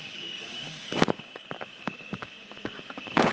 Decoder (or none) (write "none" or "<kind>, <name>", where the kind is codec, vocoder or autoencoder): codec, DAC